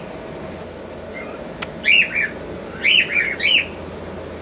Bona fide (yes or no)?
yes